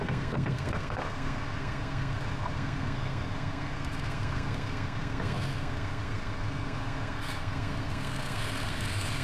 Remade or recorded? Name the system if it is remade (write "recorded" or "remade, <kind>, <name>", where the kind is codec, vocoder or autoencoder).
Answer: remade, codec, SNAC